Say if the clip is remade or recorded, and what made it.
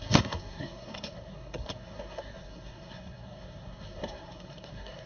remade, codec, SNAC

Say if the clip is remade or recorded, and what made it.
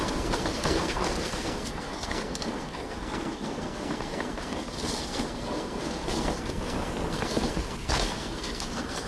remade, codec, SNAC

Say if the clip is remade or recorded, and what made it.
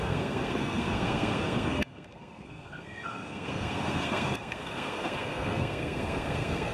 remade, codec, SNAC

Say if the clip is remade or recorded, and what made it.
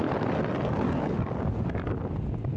recorded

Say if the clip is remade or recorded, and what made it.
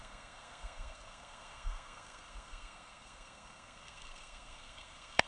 remade, codec, SNAC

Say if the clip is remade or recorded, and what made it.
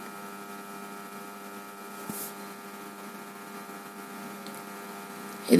recorded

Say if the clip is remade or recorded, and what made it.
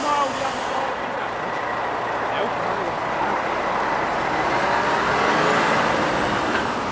recorded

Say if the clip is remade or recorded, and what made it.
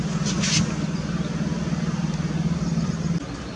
recorded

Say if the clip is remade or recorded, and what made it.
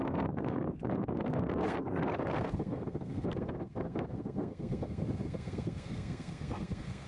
remade, codec, SNAC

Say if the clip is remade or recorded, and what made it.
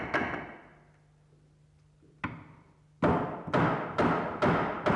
recorded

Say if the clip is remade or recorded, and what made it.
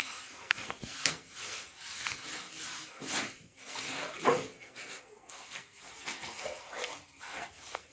remade, codec, SNAC